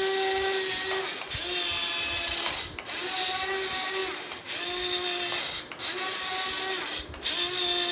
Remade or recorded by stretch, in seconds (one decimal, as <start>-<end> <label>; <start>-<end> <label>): 0.0-7.9 recorded